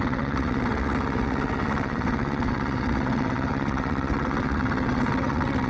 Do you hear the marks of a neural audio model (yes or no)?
yes